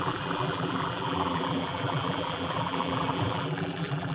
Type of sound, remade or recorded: remade